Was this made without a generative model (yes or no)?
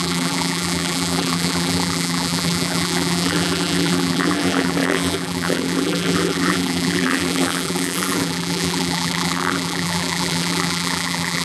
no